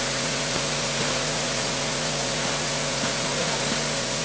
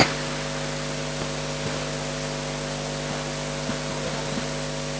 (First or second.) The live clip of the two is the second